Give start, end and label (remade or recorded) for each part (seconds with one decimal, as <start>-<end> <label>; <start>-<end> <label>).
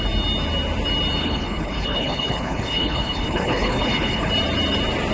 0.0-1.2 recorded; 1.2-4.3 remade; 4.3-5.1 recorded